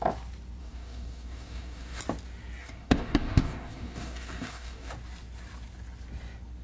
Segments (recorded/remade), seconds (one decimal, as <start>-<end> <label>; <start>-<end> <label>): 0.0-0.6 recorded; 0.6-2.0 remade; 2.0-2.6 recorded; 2.6-4.9 remade; 4.9-6.6 recorded